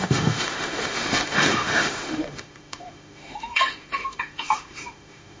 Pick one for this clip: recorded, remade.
remade